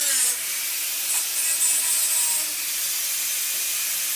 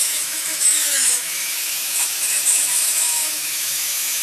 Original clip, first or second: first